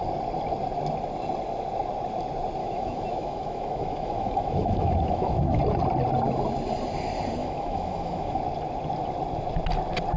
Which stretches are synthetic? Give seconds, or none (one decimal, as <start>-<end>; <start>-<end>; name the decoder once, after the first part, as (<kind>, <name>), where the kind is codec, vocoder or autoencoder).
2.6-5.6 (autoencoder, DAC-VAE); 7.4-8.4